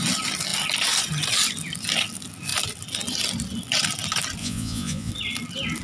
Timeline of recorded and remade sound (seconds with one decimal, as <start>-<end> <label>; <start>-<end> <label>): 0.0-4.4 recorded; 4.4-5.1 remade; 5.1-5.8 recorded